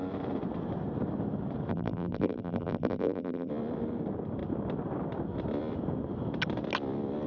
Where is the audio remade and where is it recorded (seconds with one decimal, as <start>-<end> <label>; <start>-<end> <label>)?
0.0-1.7 recorded; 1.7-3.5 remade; 3.5-7.3 recorded